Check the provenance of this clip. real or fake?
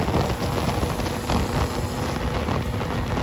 real